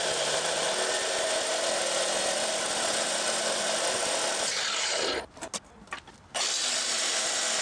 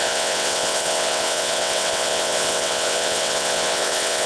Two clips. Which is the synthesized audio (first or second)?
second